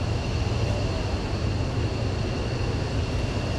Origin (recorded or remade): recorded